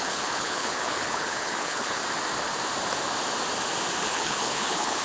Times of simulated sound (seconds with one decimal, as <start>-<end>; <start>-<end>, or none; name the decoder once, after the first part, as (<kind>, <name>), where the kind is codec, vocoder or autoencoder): 0.0-2.0 (codec, HILCodec); 4.0-5.0